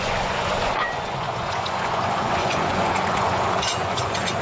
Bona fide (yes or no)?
no